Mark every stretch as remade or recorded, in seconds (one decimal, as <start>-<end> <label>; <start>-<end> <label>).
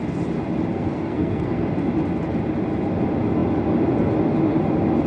0.0-0.7 recorded; 0.7-1.7 remade; 1.7-5.1 recorded